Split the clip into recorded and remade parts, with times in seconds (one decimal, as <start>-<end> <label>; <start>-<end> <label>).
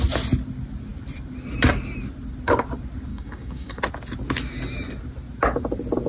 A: 0.0-3.1 recorded; 3.1-3.8 remade; 3.8-6.1 recorded